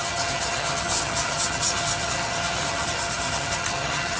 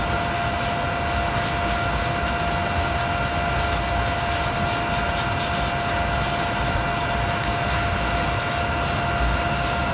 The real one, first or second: second